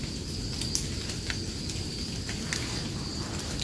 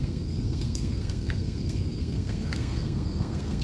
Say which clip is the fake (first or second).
second